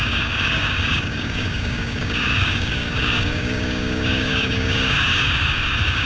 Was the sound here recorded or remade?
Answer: remade